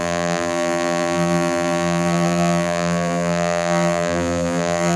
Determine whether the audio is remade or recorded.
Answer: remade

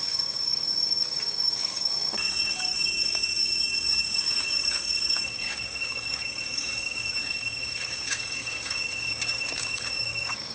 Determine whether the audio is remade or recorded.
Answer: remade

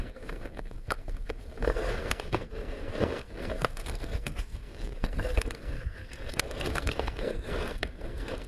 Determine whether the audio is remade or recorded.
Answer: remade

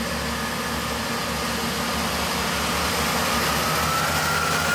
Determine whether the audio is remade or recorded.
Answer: recorded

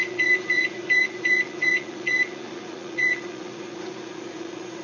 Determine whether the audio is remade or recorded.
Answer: remade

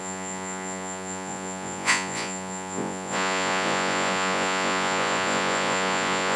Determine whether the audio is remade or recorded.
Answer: remade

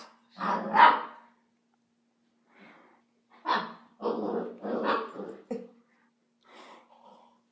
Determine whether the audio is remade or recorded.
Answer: recorded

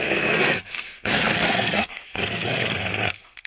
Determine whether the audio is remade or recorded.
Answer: remade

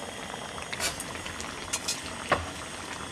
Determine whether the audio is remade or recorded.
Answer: recorded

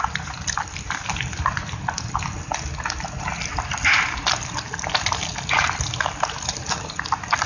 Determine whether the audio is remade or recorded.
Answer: recorded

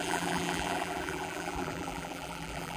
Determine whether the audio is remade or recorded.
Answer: remade